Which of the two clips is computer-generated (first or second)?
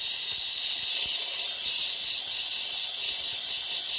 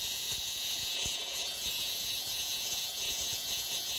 second